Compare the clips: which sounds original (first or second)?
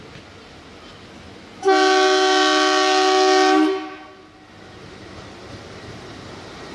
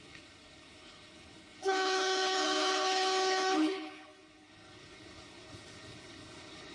first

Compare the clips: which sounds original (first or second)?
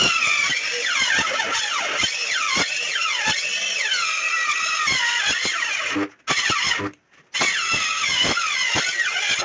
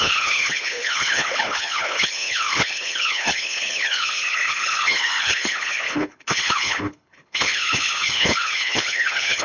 first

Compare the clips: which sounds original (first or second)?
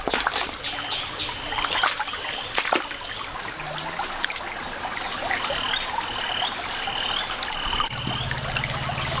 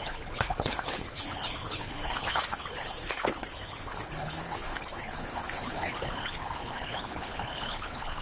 first